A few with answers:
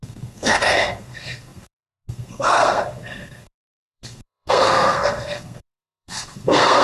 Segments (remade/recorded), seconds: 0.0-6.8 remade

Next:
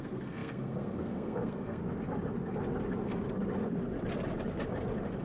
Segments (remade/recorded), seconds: 0.0-1.8 remade; 1.8-5.2 recorded

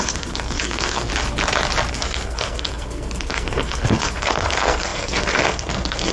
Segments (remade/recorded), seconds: 0.0-1.1 remade; 1.1-1.9 recorded; 1.9-6.1 remade

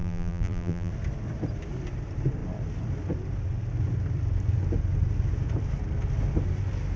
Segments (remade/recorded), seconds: 0.0-0.9 remade; 0.9-7.0 recorded

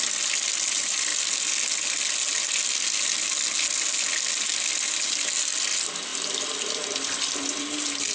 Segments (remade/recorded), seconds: 0.0-8.1 recorded

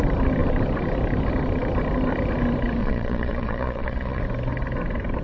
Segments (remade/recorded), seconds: 0.0-2.8 recorded; 2.8-4.2 remade; 4.2-5.2 recorded

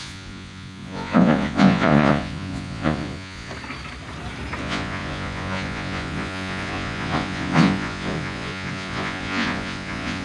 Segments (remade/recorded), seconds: 0.0-3.5 remade; 3.5-4.6 recorded; 4.6-10.2 remade